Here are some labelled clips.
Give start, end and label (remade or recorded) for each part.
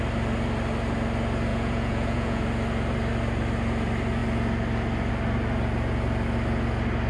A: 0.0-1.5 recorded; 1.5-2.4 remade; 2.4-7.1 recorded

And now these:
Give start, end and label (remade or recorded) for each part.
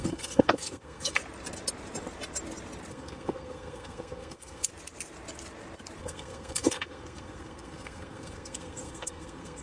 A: 0.0-1.2 remade; 1.2-2.9 recorded; 2.9-4.7 remade; 4.7-6.0 recorded; 6.0-9.6 remade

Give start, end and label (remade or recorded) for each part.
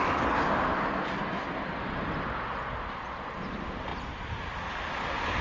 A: 0.0-5.4 recorded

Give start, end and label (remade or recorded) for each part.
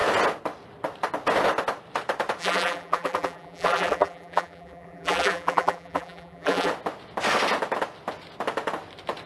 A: 0.0-2.4 recorded; 2.4-6.7 remade; 6.7-9.3 recorded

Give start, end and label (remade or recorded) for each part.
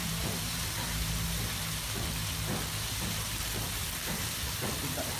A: 0.0-1.1 remade; 1.1-5.2 recorded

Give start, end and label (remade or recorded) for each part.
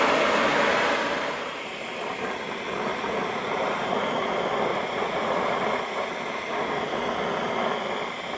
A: 0.0-2.9 recorded; 2.9-4.3 remade; 4.3-4.7 recorded; 4.7-6.1 remade; 6.1-8.4 recorded